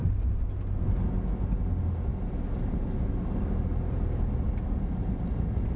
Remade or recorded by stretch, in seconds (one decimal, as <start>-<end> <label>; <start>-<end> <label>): 0.0-5.8 recorded